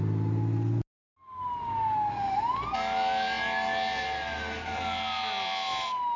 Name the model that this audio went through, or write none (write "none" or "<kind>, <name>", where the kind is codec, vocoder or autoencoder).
none